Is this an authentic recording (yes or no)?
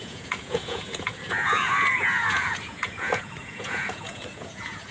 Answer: no